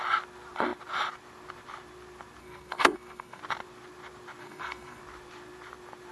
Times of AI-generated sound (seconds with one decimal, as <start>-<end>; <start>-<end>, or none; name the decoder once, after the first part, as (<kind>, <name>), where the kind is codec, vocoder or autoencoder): 2.4-3.4 (codec, SNAC); 4.4-5.0